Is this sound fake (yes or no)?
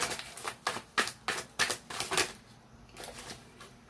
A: no